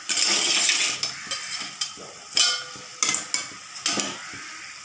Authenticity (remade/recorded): recorded